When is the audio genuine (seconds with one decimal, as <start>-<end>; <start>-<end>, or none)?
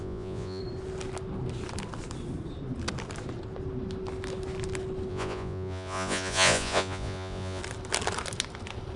0.6-5.1; 7.6-9.0